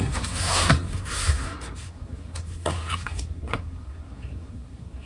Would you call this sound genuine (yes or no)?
no